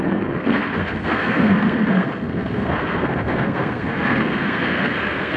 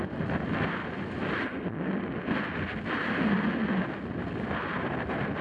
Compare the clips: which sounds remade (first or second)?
first